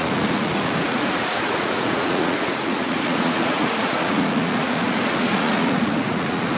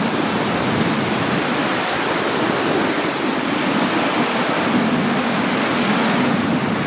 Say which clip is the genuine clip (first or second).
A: second